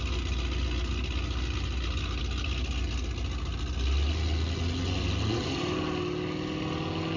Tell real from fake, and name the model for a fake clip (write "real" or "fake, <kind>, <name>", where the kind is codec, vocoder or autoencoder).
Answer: real